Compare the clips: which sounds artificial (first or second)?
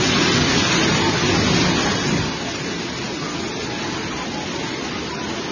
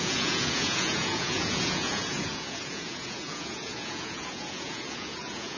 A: second